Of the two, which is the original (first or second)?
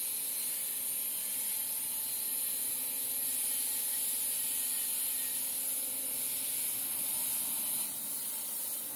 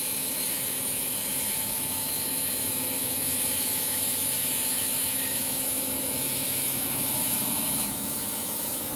first